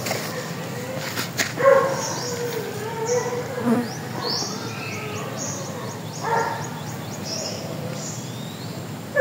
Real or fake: real